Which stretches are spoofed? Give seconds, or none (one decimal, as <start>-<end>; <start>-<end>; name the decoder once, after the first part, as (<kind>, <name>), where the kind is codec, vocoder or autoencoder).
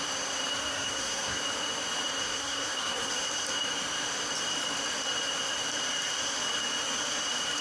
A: 0.7-1.4 (codec, SNAC); 2.2-3.1